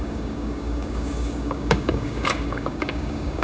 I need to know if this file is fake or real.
fake